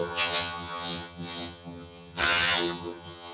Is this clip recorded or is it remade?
remade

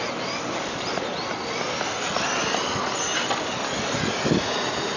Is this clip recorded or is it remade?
recorded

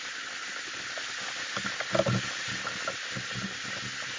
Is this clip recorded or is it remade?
recorded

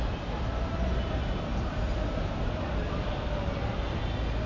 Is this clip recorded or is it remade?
recorded